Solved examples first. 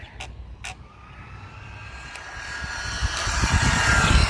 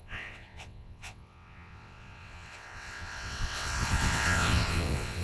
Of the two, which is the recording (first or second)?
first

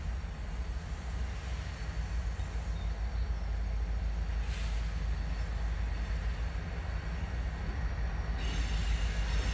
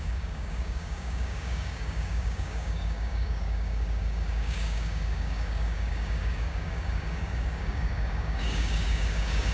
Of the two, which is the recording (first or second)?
first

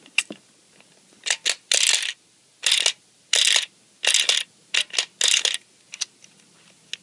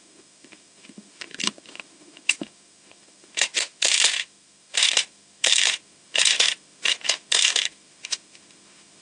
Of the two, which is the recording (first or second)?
first